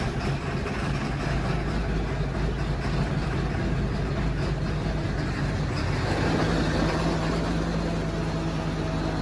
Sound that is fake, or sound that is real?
real